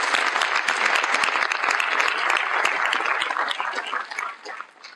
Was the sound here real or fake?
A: fake